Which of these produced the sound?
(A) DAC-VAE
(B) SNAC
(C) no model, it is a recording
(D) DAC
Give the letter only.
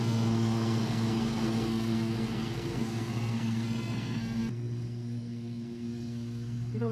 B